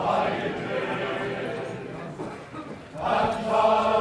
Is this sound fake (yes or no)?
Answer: no